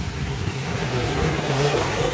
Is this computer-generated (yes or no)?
yes